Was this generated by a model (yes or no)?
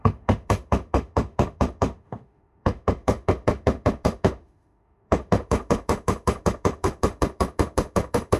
yes